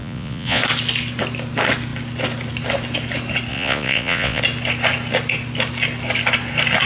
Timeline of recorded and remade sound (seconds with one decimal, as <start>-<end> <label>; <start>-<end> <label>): 0.0-0.6 remade; 0.6-3.5 recorded; 3.5-4.4 remade; 4.4-6.9 recorded